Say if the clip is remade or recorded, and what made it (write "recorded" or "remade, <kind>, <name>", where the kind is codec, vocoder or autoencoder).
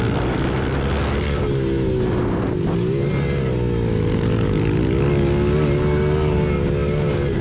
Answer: recorded